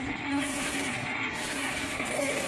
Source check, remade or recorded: remade